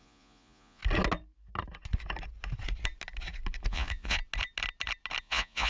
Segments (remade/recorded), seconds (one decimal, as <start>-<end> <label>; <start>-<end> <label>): 0.0-0.8 remade; 0.8-3.7 recorded; 3.7-4.2 remade; 4.2-5.2 recorded; 5.2-5.7 remade